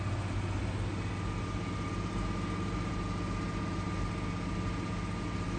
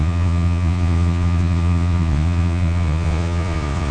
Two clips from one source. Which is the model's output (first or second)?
second